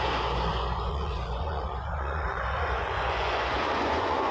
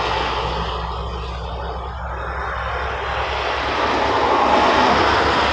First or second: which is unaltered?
second